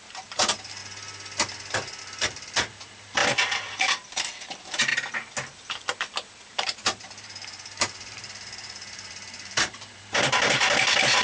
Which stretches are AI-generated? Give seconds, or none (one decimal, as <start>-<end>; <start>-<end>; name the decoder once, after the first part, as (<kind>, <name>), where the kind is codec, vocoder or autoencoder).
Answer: 0.0-0.8 (vocoder, BigVGAN v2); 2.0-4.9; 6.3-11.2